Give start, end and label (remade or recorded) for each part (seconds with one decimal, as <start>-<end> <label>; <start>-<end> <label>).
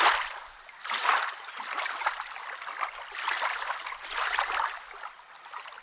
0.0-5.8 recorded